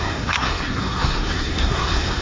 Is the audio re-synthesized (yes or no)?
yes